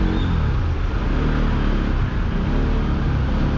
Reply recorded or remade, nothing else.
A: recorded